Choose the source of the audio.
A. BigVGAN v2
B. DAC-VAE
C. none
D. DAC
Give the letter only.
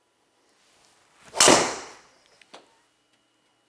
C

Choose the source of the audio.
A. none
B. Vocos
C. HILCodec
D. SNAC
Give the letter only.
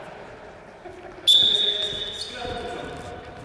A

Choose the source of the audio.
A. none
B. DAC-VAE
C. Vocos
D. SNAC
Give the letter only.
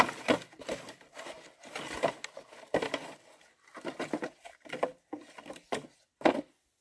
A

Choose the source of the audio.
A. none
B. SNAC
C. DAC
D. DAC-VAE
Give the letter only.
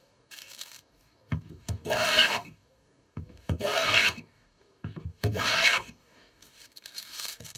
C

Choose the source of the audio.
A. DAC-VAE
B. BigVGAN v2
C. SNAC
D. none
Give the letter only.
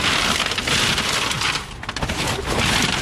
D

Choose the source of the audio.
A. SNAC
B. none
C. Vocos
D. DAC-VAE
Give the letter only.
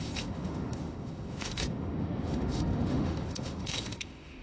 D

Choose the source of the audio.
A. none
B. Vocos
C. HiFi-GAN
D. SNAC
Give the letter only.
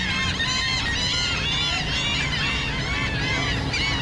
A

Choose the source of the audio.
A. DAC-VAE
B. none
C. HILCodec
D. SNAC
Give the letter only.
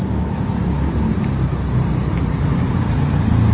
B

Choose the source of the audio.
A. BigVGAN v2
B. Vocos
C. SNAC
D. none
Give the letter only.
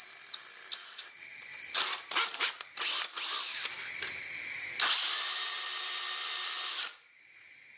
D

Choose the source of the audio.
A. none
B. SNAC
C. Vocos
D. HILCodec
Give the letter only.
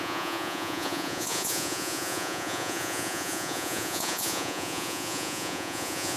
C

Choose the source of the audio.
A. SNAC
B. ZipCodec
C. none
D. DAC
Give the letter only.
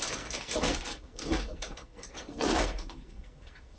A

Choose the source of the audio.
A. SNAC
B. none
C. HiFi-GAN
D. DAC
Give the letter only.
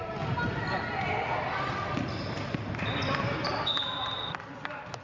B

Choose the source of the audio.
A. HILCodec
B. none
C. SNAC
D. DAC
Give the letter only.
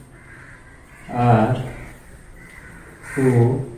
B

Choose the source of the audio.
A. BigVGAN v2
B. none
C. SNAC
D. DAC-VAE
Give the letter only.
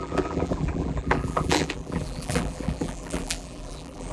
A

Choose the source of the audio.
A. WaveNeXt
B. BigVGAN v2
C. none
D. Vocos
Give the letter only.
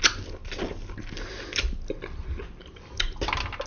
C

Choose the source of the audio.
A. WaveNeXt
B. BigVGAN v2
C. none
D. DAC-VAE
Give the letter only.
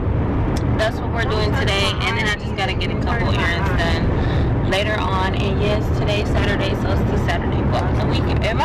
C